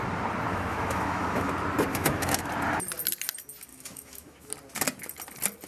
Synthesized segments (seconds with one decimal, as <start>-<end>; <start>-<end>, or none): 0.5-1.5; 1.9-2.5; 3.7-4.5